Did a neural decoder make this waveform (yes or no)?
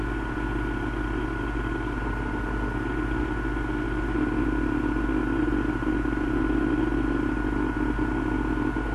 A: no